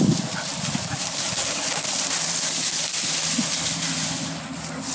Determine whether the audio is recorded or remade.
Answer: remade